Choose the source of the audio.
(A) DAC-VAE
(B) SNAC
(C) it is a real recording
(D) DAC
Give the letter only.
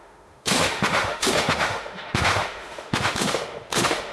A